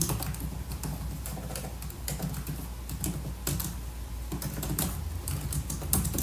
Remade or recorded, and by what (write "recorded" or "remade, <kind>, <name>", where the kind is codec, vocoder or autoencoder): recorded